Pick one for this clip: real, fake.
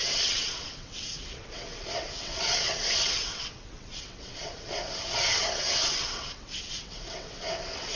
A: fake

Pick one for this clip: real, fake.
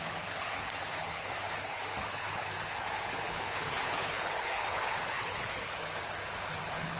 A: fake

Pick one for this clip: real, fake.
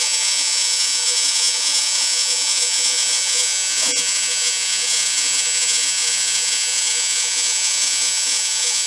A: fake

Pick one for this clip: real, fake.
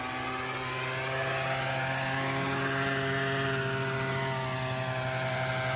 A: real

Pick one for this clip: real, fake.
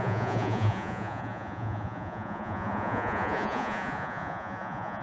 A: fake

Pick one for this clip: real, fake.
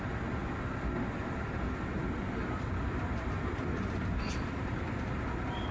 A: real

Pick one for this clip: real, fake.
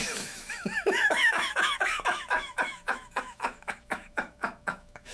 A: fake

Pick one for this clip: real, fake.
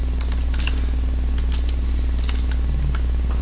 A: real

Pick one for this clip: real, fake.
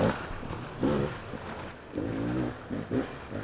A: real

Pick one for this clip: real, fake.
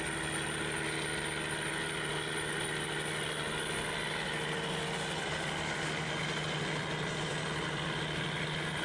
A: real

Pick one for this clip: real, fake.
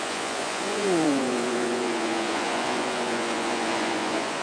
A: fake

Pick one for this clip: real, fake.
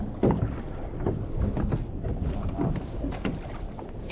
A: real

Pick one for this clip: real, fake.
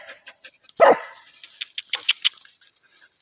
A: real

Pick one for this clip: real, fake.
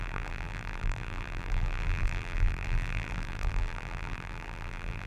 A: fake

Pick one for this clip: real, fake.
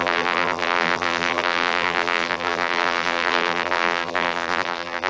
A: fake